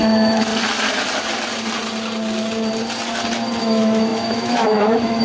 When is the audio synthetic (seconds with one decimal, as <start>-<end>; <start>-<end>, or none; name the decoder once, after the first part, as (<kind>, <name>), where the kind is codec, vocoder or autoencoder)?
0.0-0.5 (autoencoder, DAC-VAE); 3.6-5.2